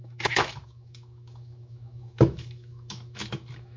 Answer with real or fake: fake